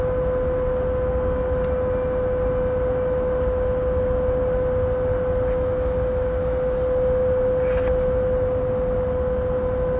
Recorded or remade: recorded